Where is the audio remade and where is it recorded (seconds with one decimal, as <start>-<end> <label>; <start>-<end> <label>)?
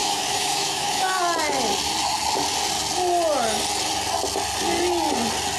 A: 0.0-1.2 remade; 1.2-5.6 recorded